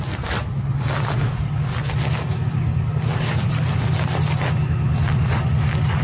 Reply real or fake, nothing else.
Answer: real